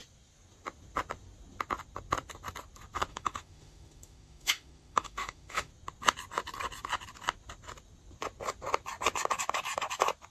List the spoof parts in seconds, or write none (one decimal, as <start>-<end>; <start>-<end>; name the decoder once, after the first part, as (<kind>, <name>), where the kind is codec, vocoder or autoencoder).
3.1-5.7 (autoencoder, DAC-VAE)